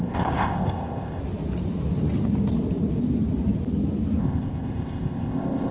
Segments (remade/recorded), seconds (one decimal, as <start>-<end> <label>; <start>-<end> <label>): 0.0-1.2 remade; 1.2-4.2 recorded; 4.2-5.7 remade